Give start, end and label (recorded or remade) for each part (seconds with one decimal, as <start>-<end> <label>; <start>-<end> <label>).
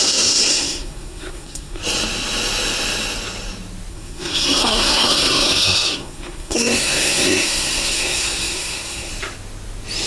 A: 0.0-1.8 remade; 1.8-3.9 recorded; 3.9-9.1 remade; 9.1-10.1 recorded